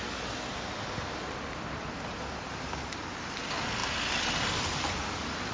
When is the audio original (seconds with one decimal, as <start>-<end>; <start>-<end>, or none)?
0.0-5.5